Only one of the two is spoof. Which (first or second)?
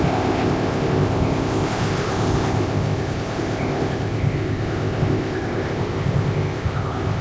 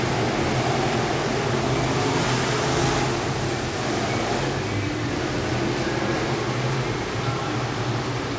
first